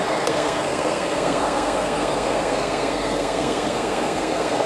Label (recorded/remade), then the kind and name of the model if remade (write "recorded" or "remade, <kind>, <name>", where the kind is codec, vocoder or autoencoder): remade, codec, SNAC